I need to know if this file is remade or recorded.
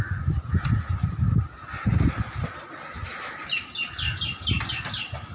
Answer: recorded